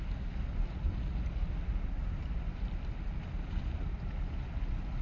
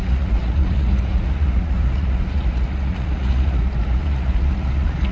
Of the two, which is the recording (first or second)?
first